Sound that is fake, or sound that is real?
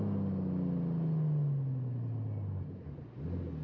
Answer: real